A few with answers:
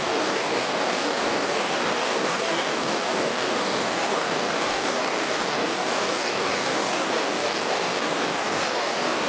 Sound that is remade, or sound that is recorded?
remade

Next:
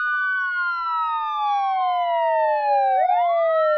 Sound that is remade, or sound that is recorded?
recorded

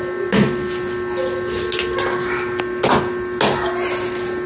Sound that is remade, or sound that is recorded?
recorded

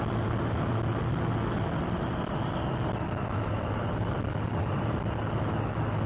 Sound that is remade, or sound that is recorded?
recorded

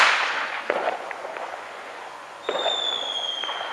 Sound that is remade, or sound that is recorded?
remade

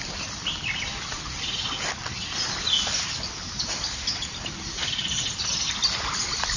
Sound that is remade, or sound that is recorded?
recorded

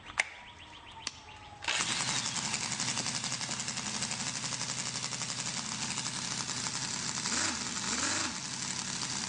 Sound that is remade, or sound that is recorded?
recorded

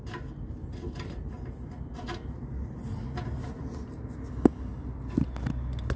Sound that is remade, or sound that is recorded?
recorded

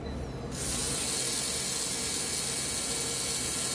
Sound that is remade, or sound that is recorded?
recorded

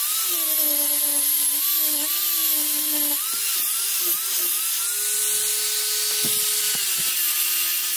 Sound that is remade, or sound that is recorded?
recorded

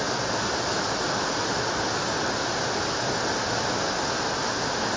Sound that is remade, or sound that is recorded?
recorded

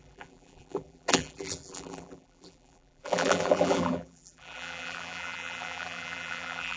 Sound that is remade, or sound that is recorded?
remade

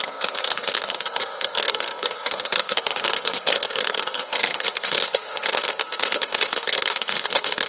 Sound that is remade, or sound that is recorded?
remade